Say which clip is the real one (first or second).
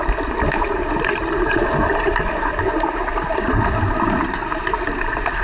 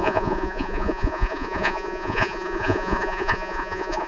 first